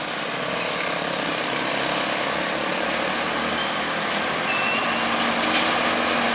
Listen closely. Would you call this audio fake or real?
real